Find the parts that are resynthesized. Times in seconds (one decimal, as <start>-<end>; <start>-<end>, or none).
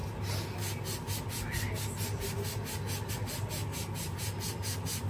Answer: none